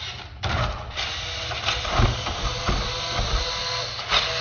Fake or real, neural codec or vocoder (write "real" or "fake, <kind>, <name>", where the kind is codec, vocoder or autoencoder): real